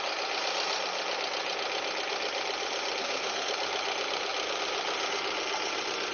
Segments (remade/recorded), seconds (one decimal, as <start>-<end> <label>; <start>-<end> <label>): 0.0-3.0 recorded; 3.0-3.5 remade; 3.5-6.1 recorded